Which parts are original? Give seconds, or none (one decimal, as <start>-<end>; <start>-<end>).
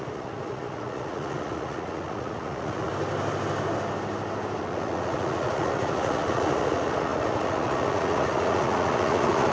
2.9-4.6